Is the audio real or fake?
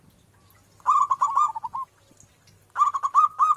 real